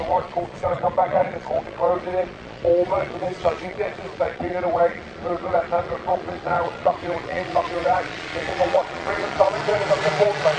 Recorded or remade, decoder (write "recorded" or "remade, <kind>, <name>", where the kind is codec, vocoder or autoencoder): remade, vocoder, Vocos